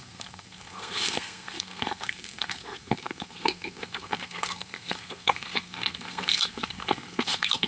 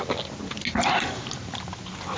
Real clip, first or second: second